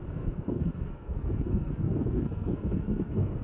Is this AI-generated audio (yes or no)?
yes